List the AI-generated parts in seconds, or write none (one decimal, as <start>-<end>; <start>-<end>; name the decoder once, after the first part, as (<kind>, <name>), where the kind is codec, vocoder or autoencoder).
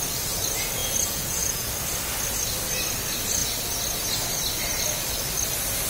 0.8-1.7 (vocoder, Vocos)